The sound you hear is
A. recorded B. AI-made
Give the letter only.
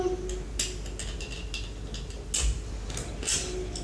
A